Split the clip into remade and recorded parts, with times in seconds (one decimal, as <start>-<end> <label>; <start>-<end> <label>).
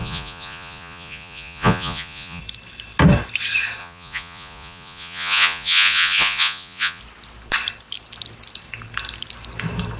0.0-2.4 remade; 2.4-3.8 recorded; 3.8-7.0 remade; 7.0-10.0 recorded